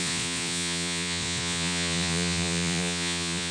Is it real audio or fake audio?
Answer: fake